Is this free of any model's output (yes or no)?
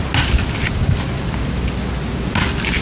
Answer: yes